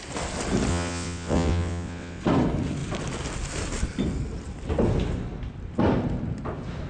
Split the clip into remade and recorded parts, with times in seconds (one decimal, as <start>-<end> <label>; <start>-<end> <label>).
0.0-0.7 recorded; 0.7-2.2 remade; 2.2-6.9 recorded